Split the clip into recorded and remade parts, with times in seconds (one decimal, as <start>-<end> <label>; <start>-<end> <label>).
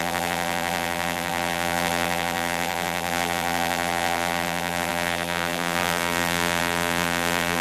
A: 0.0-7.6 remade